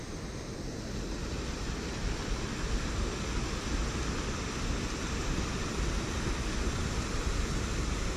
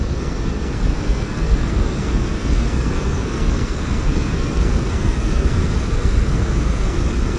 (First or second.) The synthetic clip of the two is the second